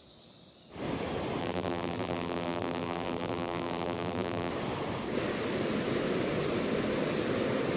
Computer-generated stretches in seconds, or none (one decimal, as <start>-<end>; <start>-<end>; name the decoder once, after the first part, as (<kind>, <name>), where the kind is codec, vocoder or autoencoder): 1.4-4.5 (vocoder, BigVGAN v2)